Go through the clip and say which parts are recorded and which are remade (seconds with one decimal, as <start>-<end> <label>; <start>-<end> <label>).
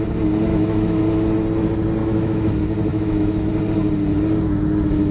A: 0.0-0.5 recorded; 0.5-1.0 remade; 1.0-2.0 recorded; 2.0-2.5 remade; 2.5-2.9 recorded; 2.9-3.5 remade; 3.5-5.1 recorded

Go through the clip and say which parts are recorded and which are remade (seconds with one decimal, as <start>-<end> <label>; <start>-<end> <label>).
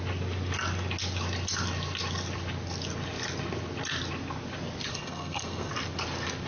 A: 0.0-4.9 recorded; 4.9-5.7 remade; 5.7-6.5 recorded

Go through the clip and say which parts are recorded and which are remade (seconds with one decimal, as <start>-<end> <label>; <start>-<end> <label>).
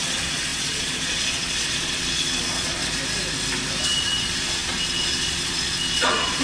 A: 0.0-2.8 remade; 2.8-3.8 recorded; 3.8-6.4 remade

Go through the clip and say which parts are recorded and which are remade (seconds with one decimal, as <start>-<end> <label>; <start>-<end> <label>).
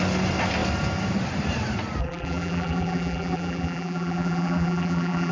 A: 0.0-2.0 recorded; 2.0-5.3 remade